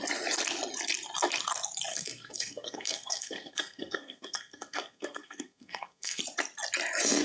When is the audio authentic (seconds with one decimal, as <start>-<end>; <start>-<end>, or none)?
0.0-1.9; 6.2-7.2

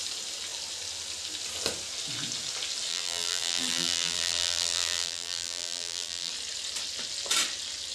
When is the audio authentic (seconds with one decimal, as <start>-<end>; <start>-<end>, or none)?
0.0-2.9; 6.3-7.9

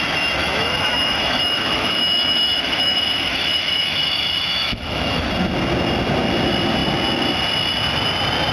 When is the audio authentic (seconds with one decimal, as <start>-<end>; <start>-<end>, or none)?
0.0-0.4; 5.3-8.5

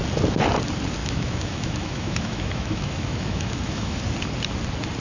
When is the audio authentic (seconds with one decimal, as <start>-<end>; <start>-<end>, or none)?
0.0-1.0; 4.0-5.0

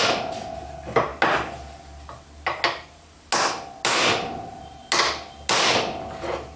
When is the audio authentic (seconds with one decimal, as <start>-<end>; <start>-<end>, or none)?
0.0-6.6

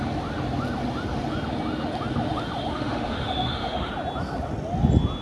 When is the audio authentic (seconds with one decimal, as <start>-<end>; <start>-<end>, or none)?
0.0-2.7; 3.9-5.2

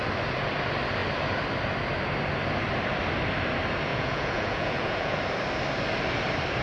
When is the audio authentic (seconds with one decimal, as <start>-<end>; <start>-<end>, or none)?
0.0-3.9; 5.2-6.6

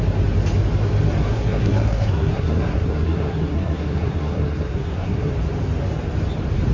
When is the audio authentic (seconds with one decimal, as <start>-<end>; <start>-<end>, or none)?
0.0-1.3; 5.3-6.7